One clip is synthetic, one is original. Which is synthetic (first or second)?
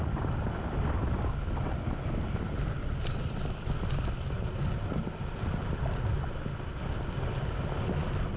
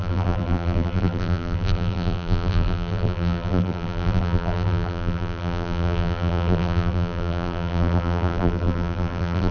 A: second